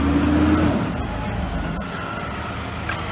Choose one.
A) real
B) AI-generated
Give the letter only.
A